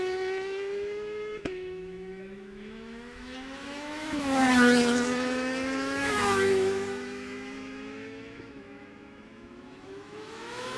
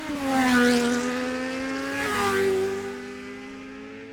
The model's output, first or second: first